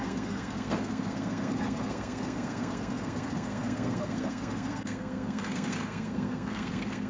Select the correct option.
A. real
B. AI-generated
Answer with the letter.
B